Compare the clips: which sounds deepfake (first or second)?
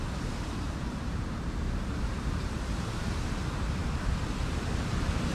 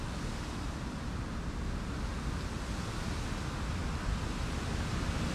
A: first